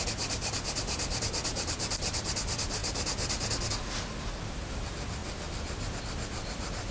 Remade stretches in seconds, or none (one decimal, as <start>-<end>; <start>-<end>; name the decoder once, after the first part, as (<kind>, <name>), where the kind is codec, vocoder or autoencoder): none